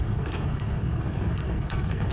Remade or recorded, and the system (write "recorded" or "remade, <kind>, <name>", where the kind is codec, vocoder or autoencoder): remade, codec, SNAC